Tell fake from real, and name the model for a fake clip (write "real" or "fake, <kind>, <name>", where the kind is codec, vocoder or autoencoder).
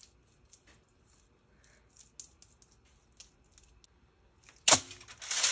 real